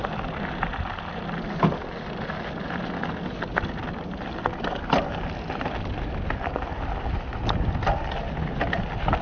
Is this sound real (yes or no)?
yes